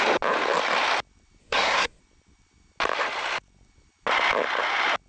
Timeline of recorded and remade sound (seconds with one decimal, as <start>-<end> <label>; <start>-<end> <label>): 0.0-1.4 recorded; 1.4-2.0 remade; 2.0-5.1 recorded

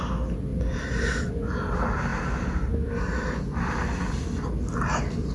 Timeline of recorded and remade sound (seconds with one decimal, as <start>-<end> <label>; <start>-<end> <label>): 0.0-5.3 recorded

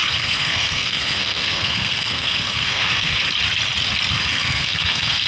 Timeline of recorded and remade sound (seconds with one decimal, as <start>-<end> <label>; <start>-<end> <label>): 0.0-3.2 remade; 3.2-4.3 recorded; 4.3-5.3 remade

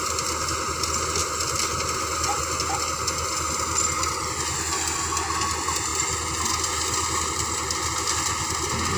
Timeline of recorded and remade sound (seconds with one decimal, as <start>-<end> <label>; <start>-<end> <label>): 0.0-9.0 recorded

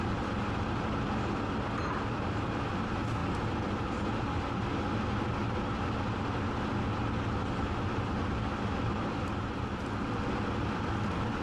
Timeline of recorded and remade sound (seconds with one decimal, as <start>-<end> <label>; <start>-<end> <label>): 0.0-11.4 recorded

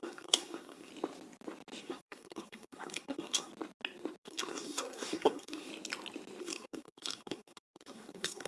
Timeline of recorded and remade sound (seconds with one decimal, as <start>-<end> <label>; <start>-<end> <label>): 0.0-0.9 remade; 0.9-1.8 recorded; 1.8-3.5 remade; 3.5-4.2 recorded; 4.2-5.7 remade; 5.7-6.4 recorded; 6.4-8.5 remade

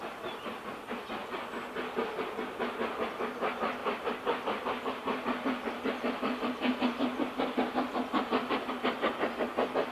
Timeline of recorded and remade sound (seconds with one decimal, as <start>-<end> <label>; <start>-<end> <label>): 0.0-9.9 recorded